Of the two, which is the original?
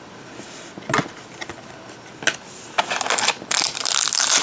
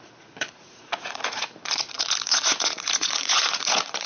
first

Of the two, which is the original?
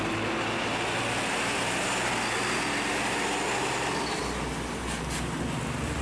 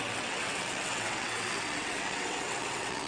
first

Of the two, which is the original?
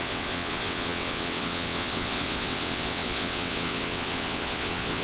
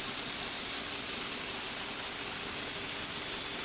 second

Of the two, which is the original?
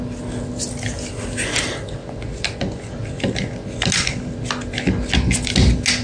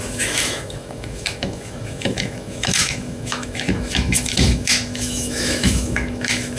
first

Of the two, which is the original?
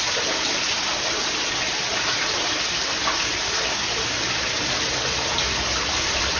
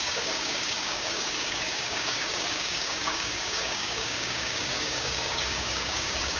first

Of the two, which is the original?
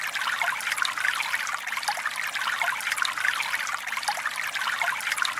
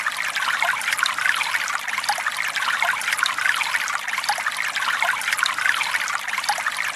first